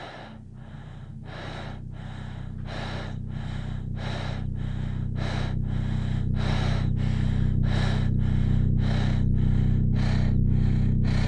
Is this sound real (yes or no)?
yes